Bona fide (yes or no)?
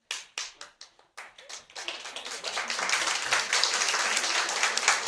yes